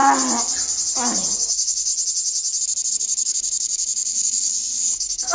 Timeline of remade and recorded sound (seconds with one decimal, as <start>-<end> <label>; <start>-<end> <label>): 0.0-1.3 recorded; 1.3-1.9 remade; 1.9-2.9 recorded; 2.9-5.3 remade

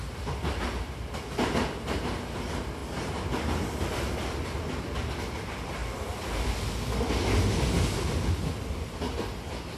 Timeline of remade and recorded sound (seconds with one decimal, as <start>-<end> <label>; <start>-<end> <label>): 0.0-2.8 recorded; 2.8-5.1 remade; 5.1-5.8 recorded; 5.8-6.3 remade; 6.3-9.8 recorded

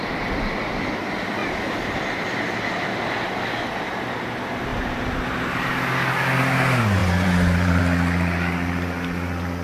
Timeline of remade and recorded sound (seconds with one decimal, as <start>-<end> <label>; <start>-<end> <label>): 0.0-4.7 recorded; 4.7-5.7 remade; 5.7-7.0 recorded; 7.0-7.8 remade; 7.8-9.6 recorded

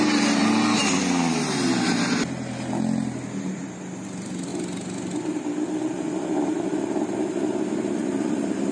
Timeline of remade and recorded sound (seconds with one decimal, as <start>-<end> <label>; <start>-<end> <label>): 0.0-8.7 recorded

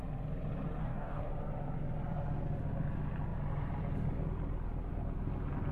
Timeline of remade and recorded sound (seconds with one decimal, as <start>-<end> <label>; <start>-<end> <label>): 0.0-0.8 recorded; 0.8-1.3 remade; 1.3-5.7 recorded